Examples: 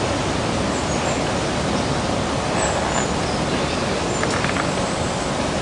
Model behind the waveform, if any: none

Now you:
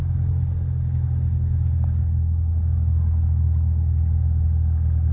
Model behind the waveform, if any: none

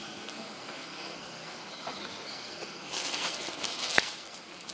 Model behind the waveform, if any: codec, SNAC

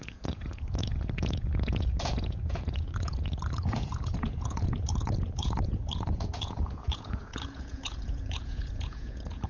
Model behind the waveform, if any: vocoder, Vocos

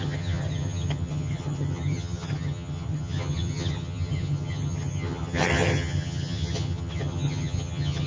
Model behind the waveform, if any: vocoder, HiFi-GAN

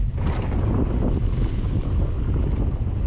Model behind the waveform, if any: none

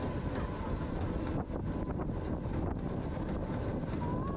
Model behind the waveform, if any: none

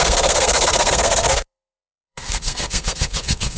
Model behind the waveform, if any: codec, SNAC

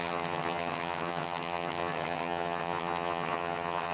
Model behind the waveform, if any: vocoder, HiFi-GAN